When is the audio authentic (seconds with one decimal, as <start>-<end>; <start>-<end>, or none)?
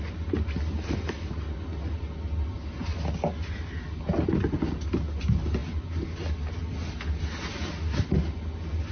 0.0-8.9